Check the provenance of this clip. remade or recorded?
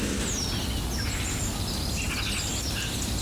recorded